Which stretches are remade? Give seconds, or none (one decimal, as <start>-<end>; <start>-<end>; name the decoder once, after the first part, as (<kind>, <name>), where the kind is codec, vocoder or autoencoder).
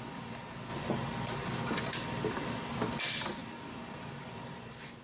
3.4-5.0 (vocoder, BigVGAN v2)